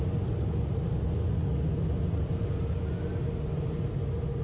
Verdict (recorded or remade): recorded